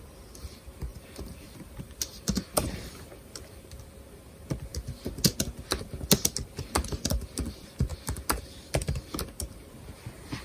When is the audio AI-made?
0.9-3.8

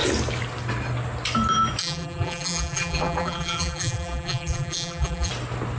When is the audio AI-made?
1.8-5.3

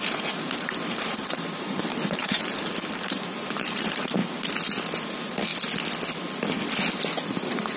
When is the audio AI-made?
0.0-4.2; 5.1-5.5; 7.3-7.8